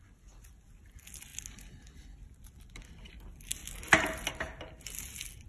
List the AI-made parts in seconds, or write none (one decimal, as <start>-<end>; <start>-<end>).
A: none